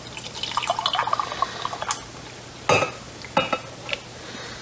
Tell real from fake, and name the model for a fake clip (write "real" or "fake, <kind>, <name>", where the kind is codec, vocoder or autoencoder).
real